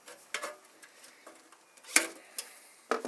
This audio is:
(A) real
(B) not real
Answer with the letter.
A